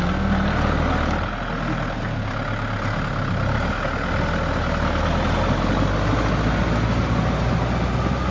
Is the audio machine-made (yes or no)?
no